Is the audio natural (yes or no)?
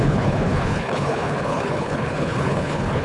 no